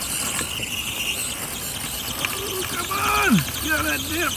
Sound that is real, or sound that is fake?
real